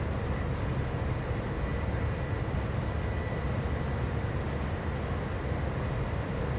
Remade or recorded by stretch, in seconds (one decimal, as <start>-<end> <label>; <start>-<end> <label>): 0.0-6.6 recorded